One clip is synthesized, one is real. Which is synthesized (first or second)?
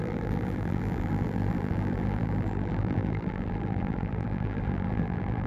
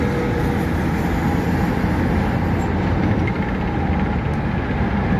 first